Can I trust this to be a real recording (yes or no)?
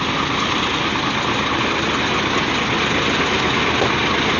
yes